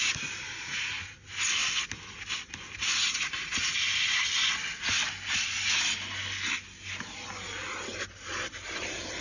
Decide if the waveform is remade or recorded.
recorded